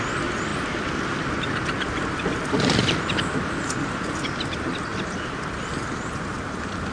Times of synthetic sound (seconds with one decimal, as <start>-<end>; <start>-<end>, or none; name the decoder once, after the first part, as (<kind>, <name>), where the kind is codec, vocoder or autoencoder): none